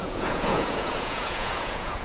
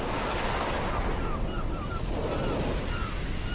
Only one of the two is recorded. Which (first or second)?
second